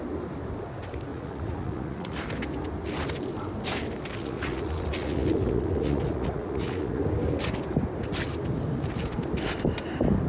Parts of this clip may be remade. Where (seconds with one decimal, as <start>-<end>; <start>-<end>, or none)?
1.1-2.2; 4.2-7.0